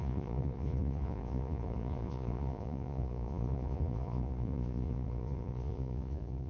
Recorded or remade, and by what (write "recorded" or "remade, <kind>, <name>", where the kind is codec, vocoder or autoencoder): remade, vocoder, Vocos